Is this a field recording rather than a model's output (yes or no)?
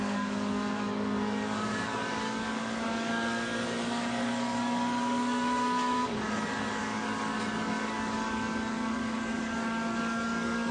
no